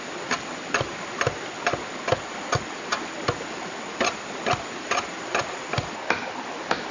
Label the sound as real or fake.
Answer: real